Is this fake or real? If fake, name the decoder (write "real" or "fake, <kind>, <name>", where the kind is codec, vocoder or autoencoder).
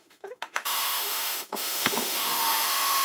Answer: fake, autoencoder, DAC-VAE